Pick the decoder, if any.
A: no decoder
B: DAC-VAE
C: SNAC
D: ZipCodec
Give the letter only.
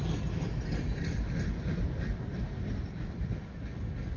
A